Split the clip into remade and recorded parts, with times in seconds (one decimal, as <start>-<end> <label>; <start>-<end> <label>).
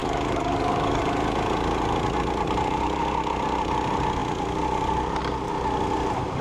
0.0-1.0 remade; 1.0-6.4 recorded